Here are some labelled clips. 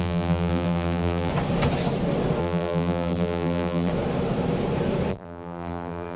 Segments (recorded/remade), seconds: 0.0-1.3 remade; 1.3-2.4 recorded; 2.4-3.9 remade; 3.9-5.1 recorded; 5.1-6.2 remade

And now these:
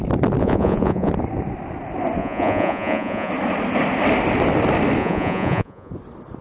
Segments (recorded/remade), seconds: 0.0-0.4 recorded; 0.4-1.1 remade; 1.1-2.2 recorded; 2.2-3.3 remade; 3.3-5.0 recorded; 5.0-5.9 remade; 5.9-6.4 recorded

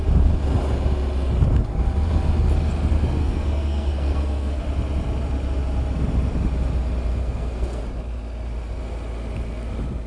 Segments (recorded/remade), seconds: 0.0-3.2 recorded; 3.2-4.6 remade; 4.6-7.2 recorded; 7.2-7.8 remade; 7.8-10.1 recorded

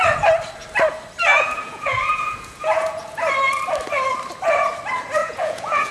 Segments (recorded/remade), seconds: 0.0-1.3 recorded; 1.3-3.2 remade; 3.2-5.2 recorded; 5.2-5.9 remade

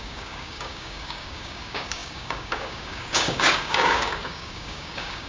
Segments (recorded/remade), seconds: 0.0-5.3 remade